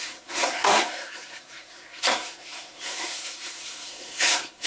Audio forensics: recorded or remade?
remade